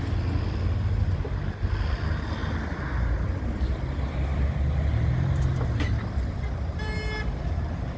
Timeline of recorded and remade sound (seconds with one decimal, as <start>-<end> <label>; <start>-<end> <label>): 0.0-8.0 recorded